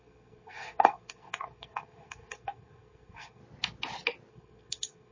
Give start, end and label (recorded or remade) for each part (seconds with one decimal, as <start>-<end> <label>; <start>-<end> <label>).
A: 0.0-3.4 remade; 3.4-4.3 recorded; 4.3-5.1 remade